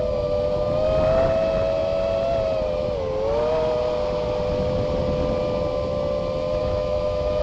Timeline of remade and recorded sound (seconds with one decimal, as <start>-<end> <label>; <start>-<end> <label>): 0.0-6.6 recorded; 6.6-7.4 remade